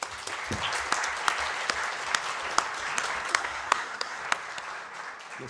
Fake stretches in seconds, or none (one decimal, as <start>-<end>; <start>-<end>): 3.3-4.2